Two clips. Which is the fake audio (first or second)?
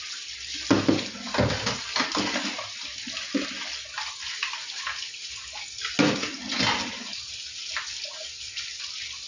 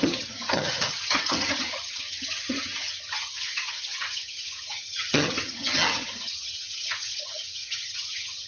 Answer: second